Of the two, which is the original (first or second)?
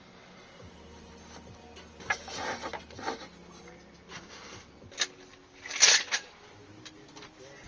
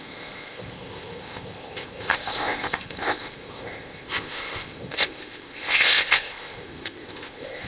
first